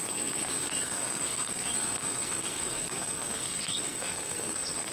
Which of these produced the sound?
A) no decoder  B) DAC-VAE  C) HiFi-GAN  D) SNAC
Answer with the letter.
D